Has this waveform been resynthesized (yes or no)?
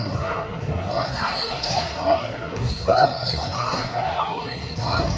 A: yes